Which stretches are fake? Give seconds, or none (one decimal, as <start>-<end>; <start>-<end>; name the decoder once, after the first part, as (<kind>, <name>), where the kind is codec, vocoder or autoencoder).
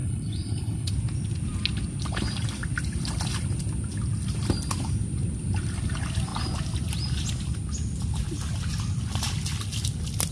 0.0-0.9 (codec, HILCodec)